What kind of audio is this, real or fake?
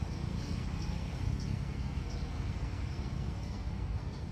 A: fake